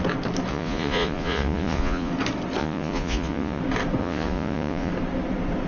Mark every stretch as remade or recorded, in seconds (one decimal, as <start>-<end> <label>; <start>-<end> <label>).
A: 0.0-0.5 recorded; 0.5-2.1 remade; 2.1-2.6 recorded; 2.6-3.6 remade; 3.6-4.0 recorded; 4.0-4.9 remade; 4.9-5.7 recorded